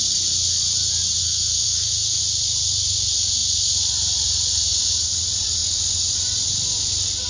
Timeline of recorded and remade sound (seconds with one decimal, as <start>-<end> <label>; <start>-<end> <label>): 0.0-1.2 recorded; 1.2-2.2 remade; 2.2-7.3 recorded